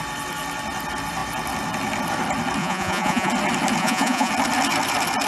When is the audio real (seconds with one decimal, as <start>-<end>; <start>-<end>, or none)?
0.0-2.6; 3.3-3.8; 4.3-5.3